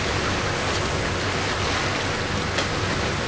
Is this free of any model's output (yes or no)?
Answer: yes